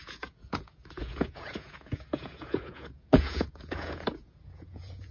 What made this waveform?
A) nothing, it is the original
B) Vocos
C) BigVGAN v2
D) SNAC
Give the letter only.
B